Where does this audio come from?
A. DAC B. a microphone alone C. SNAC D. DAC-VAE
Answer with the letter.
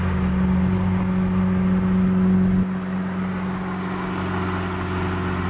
B